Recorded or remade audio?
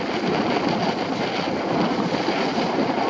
recorded